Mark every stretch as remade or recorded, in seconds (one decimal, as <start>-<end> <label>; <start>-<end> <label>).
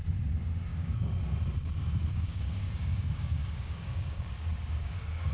0.0-0.7 recorded; 0.7-1.2 remade; 1.2-2.0 recorded; 2.0-5.3 remade